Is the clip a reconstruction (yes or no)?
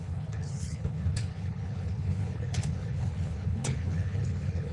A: yes